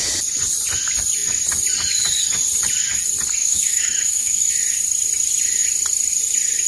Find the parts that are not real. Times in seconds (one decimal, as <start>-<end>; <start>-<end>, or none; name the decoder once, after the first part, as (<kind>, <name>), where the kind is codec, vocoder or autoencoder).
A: 3.4-4.5 (autoencoder, DAC-VAE)